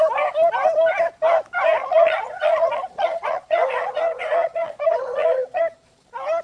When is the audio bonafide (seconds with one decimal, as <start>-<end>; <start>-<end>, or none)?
0.0-1.8; 5.6-6.4